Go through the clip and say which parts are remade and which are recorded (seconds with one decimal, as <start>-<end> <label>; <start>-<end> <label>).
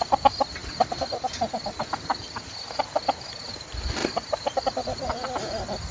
0.0-5.9 recorded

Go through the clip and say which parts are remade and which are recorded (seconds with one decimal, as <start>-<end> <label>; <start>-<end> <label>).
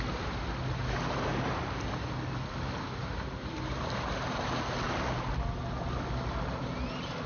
0.0-7.3 recorded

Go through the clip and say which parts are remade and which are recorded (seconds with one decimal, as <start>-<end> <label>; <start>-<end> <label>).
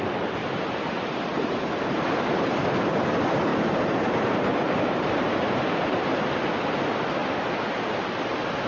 0.0-0.4 recorded; 0.4-2.6 remade; 2.6-3.5 recorded; 3.5-6.0 remade; 6.0-8.7 recorded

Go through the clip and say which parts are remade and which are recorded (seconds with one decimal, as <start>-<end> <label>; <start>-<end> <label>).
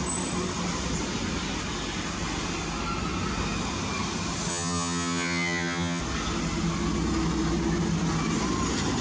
0.0-4.5 recorded; 4.5-6.0 remade; 6.0-9.0 recorded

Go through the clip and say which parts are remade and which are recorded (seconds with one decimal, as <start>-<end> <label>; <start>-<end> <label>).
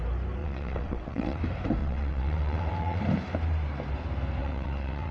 0.0-0.4 recorded; 0.4-1.4 remade; 1.4-1.8 recorded; 1.8-3.0 remade; 3.0-4.4 recorded; 4.4-5.1 remade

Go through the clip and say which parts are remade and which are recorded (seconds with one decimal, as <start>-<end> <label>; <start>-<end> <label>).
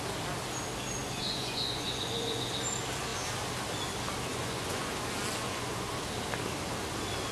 0.0-1.0 recorded; 1.0-2.4 remade; 2.4-4.3 recorded; 4.3-4.9 remade; 4.9-5.4 recorded; 5.4-5.9 remade; 5.9-7.3 recorded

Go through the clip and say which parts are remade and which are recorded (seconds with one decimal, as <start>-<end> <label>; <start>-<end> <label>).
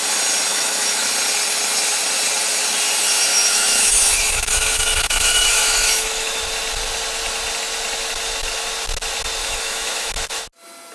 0.0-0.5 recorded; 0.5-1.1 remade; 1.1-3.3 recorded; 3.3-6.4 remade; 6.4-9.4 recorded; 9.4-10.1 remade; 10.1-10.9 recorded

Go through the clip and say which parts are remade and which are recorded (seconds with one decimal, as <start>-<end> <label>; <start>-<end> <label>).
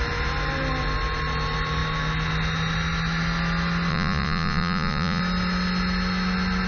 0.0-3.9 recorded; 3.9-5.2 remade; 5.2-6.7 recorded